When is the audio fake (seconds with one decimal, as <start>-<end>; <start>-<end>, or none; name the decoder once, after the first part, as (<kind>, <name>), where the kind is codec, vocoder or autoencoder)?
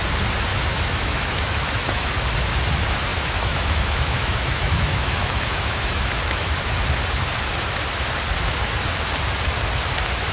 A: 0.5-2.1 (autoencoder, DAC-VAE); 3.1-6.8